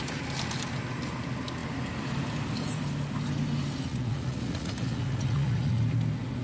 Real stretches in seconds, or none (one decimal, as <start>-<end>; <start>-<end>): 0.0-3.9; 5.8-6.4